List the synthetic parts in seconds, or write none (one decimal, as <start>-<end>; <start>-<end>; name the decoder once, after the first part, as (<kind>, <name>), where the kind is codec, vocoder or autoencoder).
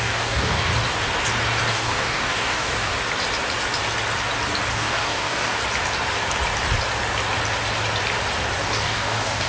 0.0-0.7 (codec, DAC); 1.7-2.9; 4.7-5.6; 8.6-9.5